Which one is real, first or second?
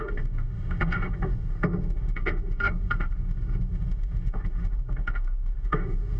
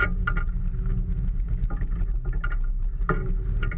second